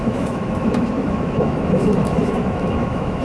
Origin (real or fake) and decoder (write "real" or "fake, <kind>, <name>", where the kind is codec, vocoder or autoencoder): fake, autoencoder, DAC-VAE